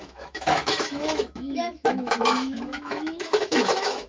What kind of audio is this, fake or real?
fake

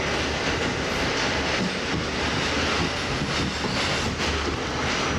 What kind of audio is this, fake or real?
real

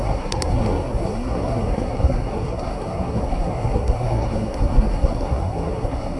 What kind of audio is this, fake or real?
fake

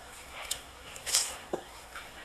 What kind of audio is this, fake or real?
fake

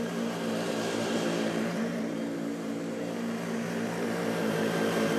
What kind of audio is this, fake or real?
fake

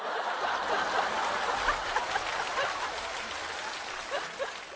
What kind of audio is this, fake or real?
real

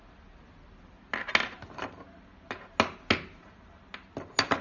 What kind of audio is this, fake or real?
real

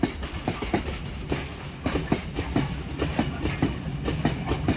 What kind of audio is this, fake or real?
real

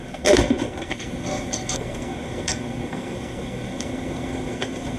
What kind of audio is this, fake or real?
fake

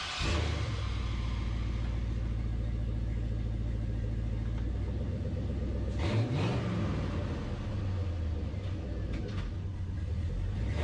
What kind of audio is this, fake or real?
real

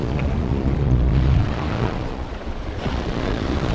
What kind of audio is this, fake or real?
fake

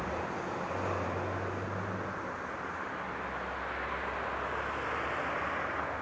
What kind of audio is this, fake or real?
real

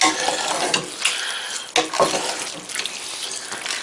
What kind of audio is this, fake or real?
real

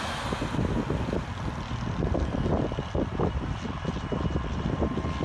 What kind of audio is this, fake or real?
real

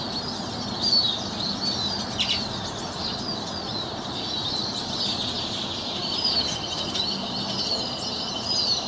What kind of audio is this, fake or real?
real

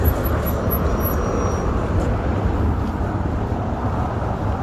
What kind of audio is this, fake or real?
real